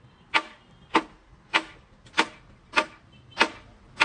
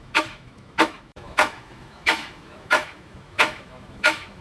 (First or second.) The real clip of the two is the first